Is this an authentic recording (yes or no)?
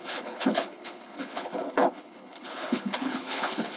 no